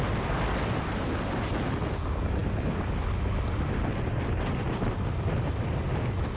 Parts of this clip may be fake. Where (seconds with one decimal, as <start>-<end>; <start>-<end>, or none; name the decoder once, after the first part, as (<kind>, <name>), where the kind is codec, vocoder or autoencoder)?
none